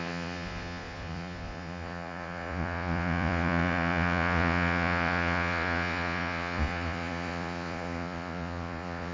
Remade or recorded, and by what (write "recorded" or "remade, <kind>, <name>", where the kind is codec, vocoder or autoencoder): remade, vocoder, Vocos